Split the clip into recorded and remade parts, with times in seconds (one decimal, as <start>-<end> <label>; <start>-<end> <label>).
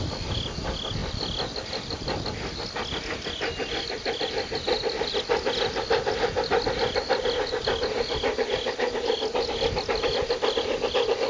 0.0-11.3 recorded